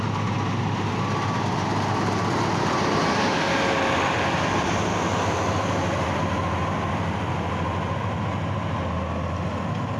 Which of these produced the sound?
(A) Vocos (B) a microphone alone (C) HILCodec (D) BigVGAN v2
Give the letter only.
B